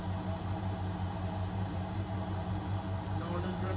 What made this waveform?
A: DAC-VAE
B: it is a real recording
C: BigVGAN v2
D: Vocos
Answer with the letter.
C